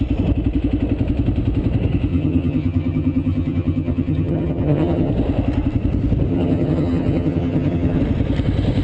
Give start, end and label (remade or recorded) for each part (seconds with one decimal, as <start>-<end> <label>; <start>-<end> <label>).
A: 0.0-2.1 recorded; 2.1-5.1 remade; 5.1-6.3 recorded; 6.3-8.0 remade; 8.0-8.8 recorded